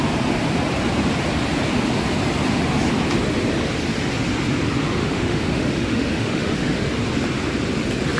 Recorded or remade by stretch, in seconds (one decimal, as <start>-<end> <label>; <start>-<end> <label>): 0.0-5.0 recorded; 5.0-6.8 remade; 6.8-8.2 recorded